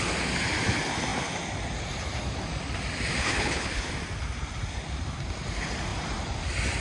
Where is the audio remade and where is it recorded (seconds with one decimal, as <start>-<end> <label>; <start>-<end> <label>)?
0.0-3.2 recorded; 3.2-3.9 remade; 3.9-6.8 recorded